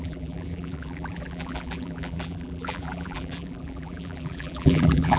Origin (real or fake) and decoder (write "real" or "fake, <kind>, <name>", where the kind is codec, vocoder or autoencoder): fake, vocoder, BigVGAN v2